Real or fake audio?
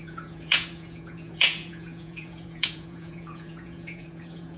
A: fake